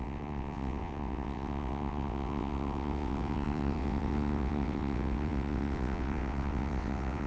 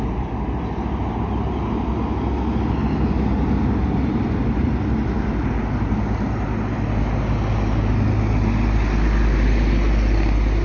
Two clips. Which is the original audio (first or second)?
second